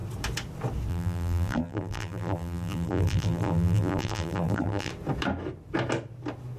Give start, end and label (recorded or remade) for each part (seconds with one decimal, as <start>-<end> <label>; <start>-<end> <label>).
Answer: 0.0-0.9 recorded; 0.9-4.9 remade; 4.9-6.6 recorded